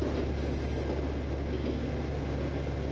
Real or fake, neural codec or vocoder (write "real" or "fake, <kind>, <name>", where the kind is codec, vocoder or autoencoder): real